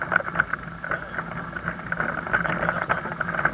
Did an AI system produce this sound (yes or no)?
no